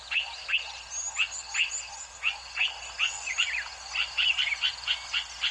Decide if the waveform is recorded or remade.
recorded